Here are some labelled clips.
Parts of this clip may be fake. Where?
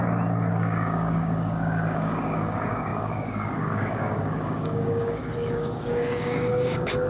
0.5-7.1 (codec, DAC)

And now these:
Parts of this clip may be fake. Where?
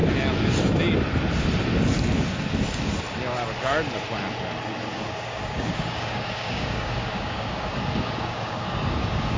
4.9-9.4 (codec, DAC)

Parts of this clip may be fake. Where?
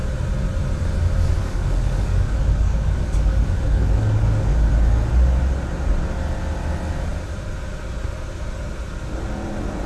1.4-4.7 (codec, DAC)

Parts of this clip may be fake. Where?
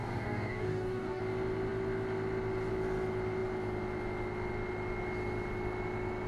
0.0-1.2 (codec, DAC)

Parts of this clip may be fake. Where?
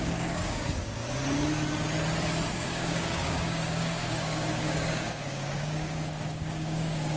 0.0-1.0 (codec, DAC); 2.5-7.2